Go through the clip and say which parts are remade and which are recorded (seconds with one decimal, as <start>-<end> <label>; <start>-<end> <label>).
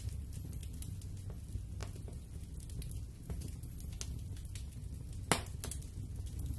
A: 0.0-6.6 recorded